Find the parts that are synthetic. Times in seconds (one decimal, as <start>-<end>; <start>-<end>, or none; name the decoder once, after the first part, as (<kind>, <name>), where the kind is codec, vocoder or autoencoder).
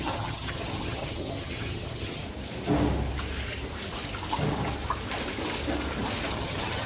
0.0-2.2 (vocoder, HiFi-GAN); 6.3-6.9